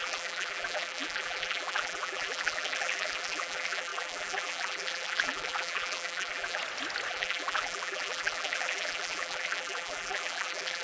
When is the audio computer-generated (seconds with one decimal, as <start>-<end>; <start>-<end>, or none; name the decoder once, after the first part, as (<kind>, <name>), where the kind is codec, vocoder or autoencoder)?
0.0-6.6 (vocoder, BigVGAN v2); 7.1-10.8